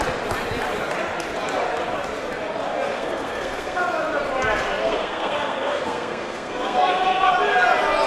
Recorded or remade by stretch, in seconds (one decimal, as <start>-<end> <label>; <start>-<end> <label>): 0.0-2.9 recorded; 2.9-3.8 remade; 3.8-4.8 recorded; 4.8-7.3 remade; 7.3-8.1 recorded